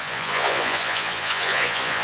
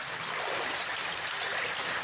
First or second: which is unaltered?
second